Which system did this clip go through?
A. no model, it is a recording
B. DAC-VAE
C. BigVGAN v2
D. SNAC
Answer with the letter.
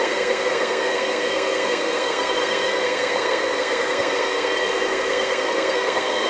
D